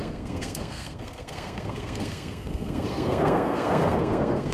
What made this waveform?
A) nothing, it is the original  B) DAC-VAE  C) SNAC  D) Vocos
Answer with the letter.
C